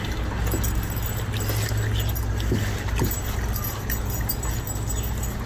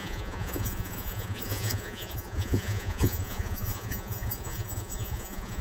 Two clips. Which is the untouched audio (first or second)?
first